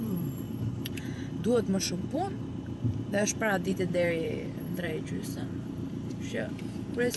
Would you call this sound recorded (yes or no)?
no